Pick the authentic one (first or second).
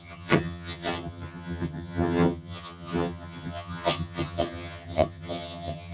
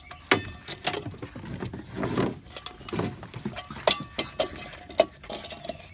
second